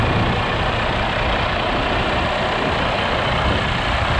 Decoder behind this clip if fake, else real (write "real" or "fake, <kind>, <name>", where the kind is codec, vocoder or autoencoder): fake, vocoder, BigVGAN v2